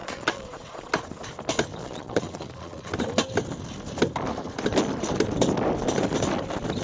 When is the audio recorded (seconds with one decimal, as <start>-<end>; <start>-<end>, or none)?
0.9-1.8; 2.9-6.8